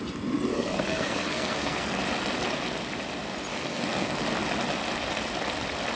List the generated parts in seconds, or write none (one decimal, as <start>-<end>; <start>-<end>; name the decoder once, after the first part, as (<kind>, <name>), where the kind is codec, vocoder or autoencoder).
0.5-2.0 (codec, SNAC); 3.5-4.2